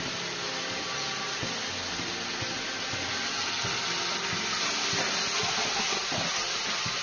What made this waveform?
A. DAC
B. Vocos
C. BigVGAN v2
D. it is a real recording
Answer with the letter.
D